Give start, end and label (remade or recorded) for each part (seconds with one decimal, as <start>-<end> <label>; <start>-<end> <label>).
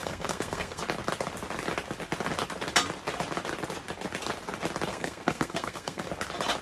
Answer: 0.0-0.8 remade; 0.8-4.9 recorded; 4.9-6.1 remade; 6.1-6.6 recorded